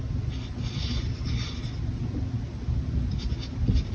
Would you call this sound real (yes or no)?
yes